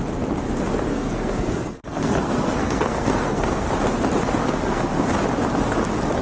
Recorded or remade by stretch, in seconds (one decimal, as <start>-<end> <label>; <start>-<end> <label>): 0.0-0.9 recorded; 0.9-3.7 remade; 3.7-4.4 recorded; 4.4-5.1 remade; 5.1-6.2 recorded